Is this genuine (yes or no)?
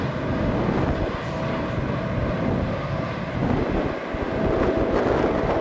yes